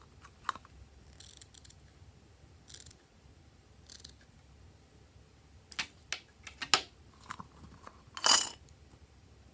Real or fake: real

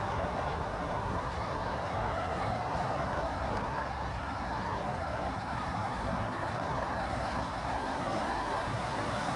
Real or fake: fake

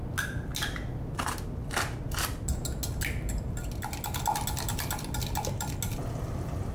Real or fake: real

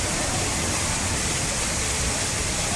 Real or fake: real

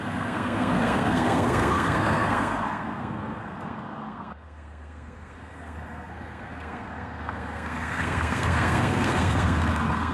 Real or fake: fake